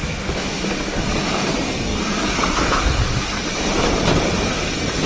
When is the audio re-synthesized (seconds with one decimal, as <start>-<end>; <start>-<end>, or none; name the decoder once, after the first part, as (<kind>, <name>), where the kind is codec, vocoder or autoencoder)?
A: 0.0-0.7 (autoencoder, DAC-VAE)